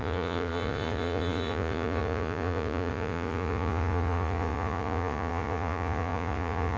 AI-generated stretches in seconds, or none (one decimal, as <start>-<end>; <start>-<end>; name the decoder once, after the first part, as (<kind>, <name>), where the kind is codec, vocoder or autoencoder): 0.0-6.8 (vocoder, Vocos)